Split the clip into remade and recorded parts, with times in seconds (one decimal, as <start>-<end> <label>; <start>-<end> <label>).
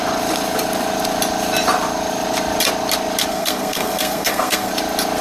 0.0-3.3 recorded; 3.3-4.7 remade; 4.7-5.2 recorded